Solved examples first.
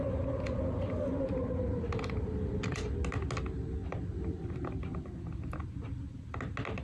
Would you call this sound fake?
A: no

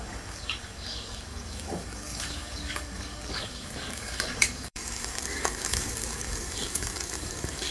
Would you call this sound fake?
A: yes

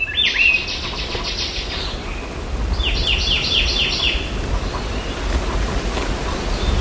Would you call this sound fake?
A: no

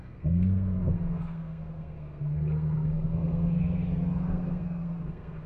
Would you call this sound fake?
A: yes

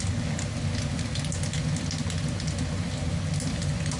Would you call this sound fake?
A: no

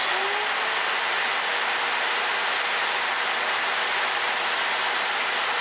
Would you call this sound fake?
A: no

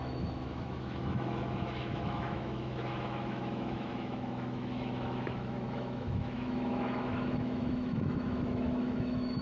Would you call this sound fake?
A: yes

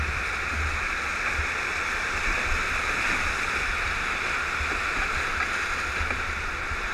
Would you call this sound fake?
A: no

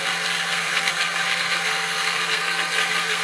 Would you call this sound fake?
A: yes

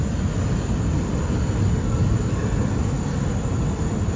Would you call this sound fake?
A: no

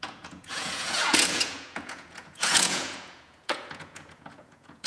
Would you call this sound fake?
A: yes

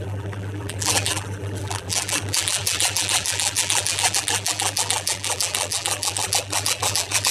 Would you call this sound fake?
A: yes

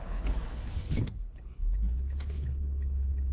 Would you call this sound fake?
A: yes